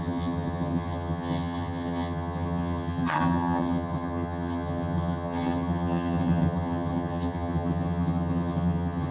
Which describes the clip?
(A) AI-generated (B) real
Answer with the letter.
A